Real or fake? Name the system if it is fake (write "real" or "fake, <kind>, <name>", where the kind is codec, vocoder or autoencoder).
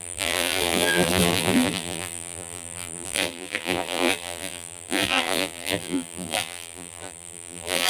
fake, vocoder, BigVGAN v2